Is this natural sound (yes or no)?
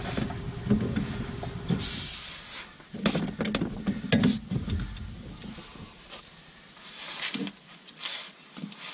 yes